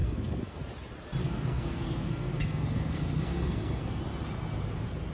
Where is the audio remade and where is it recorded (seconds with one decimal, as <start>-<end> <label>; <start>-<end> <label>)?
0.0-0.6 remade; 0.6-1.2 recorded; 1.2-4.0 remade; 4.0-5.1 recorded